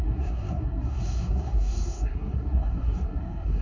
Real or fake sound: fake